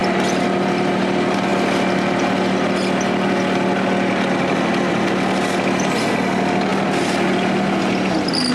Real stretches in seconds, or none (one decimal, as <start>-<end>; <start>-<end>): 0.0-8.5